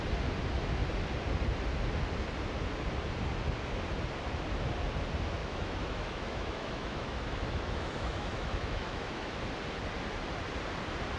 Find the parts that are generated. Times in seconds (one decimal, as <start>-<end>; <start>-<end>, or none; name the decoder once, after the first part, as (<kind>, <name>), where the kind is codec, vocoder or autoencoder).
5.4-9.4 (autoencoder, DAC-VAE)